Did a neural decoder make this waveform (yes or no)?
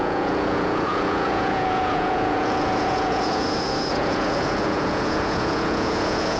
yes